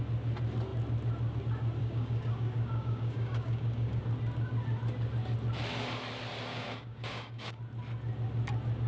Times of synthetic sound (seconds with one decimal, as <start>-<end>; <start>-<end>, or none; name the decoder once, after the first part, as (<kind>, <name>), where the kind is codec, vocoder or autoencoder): 1.8-4.0 (codec, DAC); 6.5-7.6

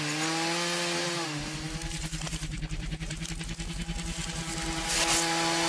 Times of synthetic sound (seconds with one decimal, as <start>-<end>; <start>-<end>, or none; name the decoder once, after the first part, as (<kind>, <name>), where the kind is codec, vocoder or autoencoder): 1.0-3.3 (vocoder, BigVGAN v2)

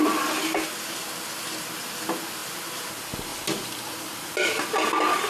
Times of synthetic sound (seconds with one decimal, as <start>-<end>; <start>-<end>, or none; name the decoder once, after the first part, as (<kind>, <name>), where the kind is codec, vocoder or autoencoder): none

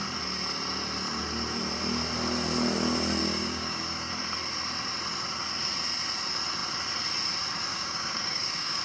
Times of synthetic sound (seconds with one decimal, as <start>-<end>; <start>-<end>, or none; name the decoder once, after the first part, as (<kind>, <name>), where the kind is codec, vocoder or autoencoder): 3.2-4.1 (codec, DAC); 7.7-8.8

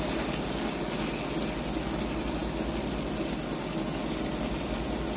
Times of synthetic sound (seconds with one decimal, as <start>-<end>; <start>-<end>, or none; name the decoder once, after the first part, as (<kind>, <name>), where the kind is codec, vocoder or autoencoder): none

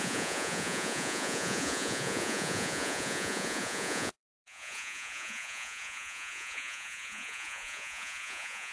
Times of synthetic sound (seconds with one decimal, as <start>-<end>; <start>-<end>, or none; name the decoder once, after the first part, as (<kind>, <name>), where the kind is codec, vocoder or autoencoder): 0.0-8.7 (vocoder, Vocos)